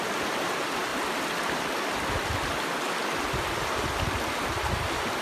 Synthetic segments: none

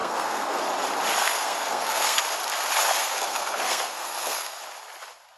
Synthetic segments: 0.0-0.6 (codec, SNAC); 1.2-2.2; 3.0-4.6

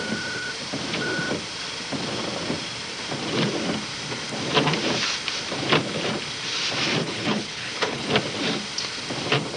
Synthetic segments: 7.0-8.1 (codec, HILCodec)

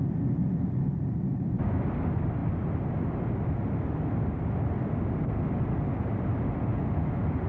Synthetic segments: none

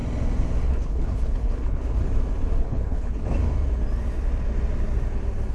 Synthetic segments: 0.7-2.0 (codec, HILCodec); 2.6-3.2

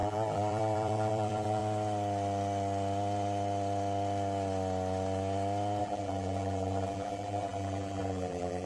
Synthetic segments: 0.0-1.6 (vocoder, BigVGAN v2); 5.8-8.7

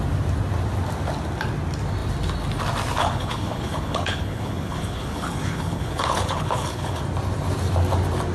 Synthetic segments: 3.0-7.0 (codec, HILCodec)